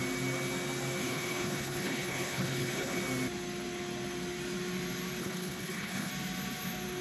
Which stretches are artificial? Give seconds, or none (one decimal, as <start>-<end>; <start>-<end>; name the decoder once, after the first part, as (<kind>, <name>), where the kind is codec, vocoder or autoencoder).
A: 1.0-3.0 (codec, HILCodec); 5.2-6.1